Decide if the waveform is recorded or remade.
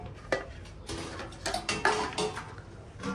recorded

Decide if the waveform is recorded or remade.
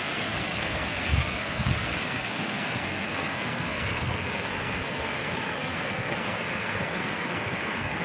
remade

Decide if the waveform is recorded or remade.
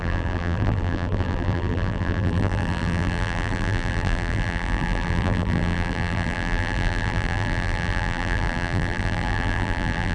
remade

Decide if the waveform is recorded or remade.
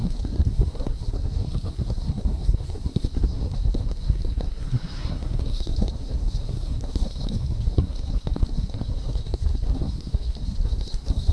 remade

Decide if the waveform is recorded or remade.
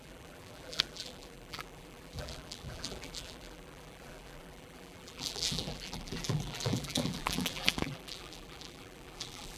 remade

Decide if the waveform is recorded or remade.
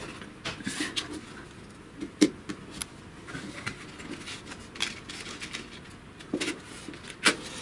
recorded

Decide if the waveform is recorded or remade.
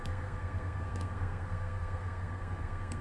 remade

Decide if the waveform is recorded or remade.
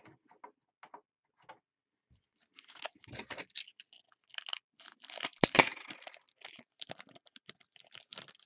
recorded